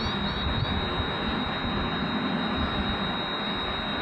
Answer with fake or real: real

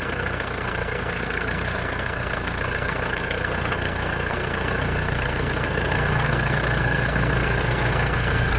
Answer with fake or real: fake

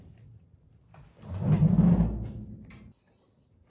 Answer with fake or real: real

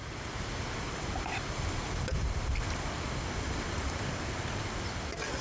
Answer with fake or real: real